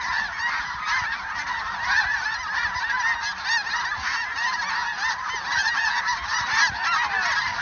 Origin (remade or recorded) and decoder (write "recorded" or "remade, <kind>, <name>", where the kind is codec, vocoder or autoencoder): recorded